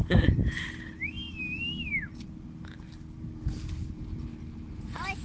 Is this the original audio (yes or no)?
yes